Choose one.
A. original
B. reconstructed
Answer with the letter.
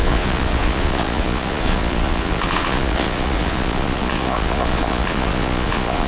B